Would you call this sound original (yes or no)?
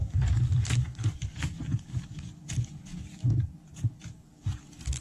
no